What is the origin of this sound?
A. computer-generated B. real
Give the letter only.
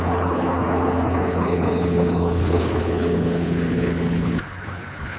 A